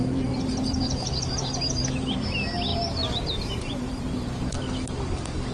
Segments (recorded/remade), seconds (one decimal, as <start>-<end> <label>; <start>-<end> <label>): 0.0-1.8 remade; 1.8-2.7 recorded; 2.7-4.5 remade; 4.5-5.5 recorded